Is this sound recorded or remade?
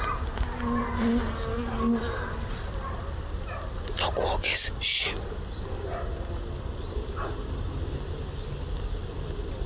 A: recorded